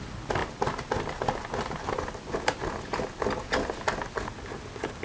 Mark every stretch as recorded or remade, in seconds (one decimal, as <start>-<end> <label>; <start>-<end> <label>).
0.0-5.0 recorded